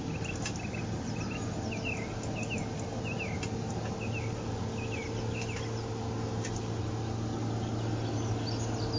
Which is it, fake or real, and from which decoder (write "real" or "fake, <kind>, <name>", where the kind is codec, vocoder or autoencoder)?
real